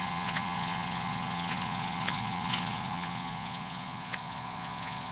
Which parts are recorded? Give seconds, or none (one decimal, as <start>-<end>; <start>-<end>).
none